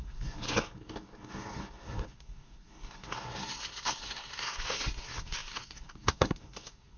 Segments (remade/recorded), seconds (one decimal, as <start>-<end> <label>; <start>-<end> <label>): 0.0-7.0 remade